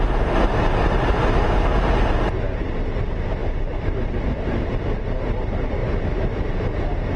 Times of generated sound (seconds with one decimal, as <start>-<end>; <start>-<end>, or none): 3.4-5.0